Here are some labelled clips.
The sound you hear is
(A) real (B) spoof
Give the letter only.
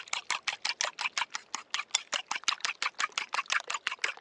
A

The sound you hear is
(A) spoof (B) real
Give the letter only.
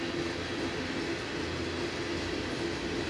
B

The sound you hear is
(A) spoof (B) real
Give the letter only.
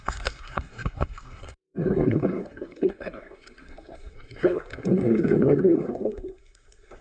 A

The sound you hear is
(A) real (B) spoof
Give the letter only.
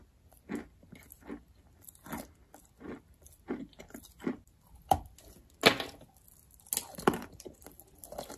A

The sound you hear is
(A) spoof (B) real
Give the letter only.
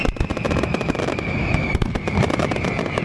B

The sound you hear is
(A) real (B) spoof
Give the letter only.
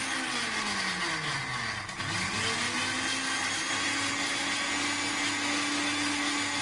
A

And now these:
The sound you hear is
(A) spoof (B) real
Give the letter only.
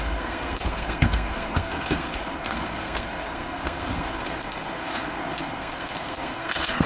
A